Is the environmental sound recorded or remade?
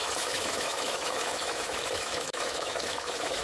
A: remade